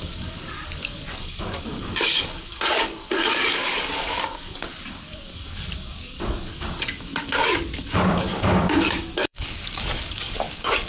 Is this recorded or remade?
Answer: remade